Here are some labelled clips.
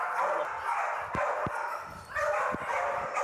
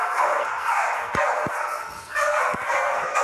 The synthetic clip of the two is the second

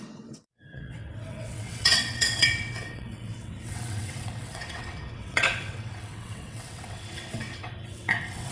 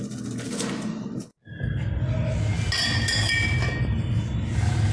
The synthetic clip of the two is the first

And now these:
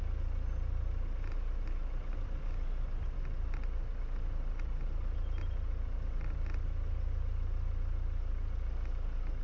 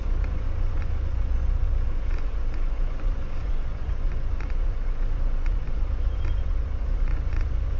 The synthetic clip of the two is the second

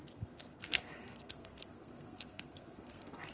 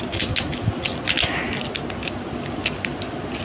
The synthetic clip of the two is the first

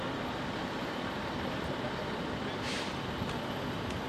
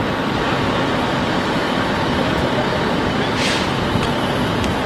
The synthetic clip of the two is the first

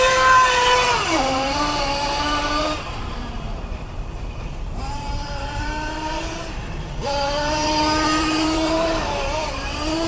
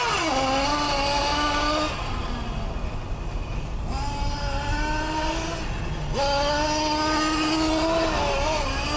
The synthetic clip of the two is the first